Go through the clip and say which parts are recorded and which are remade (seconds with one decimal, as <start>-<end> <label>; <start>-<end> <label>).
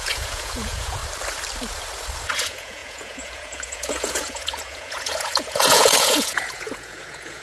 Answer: 0.0-1.0 remade; 1.0-2.3 recorded; 2.3-7.4 remade